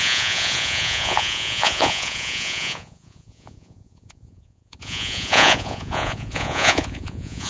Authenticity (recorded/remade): remade